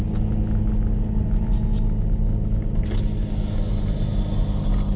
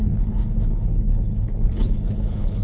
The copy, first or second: second